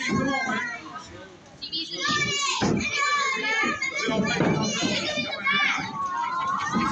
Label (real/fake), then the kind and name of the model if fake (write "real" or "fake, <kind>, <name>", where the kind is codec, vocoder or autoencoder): real